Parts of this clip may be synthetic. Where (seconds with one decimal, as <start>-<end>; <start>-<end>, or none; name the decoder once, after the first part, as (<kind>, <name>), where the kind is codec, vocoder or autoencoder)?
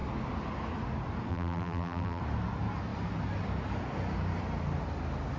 1.3-2.2 (vocoder, BigVGAN v2)